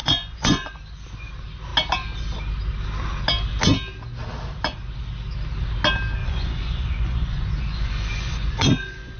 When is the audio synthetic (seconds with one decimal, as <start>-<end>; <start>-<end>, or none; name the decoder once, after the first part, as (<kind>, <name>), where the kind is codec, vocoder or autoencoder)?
0.0-0.8 (vocoder, Vocos); 6.2-9.2